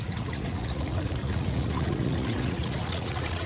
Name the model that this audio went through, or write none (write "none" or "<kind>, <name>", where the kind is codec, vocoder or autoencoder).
vocoder, Vocos